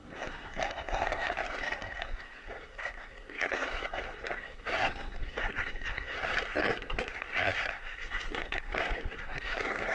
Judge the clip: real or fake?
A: fake